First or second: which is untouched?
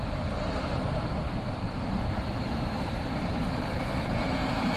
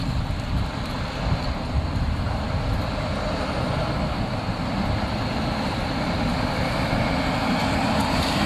second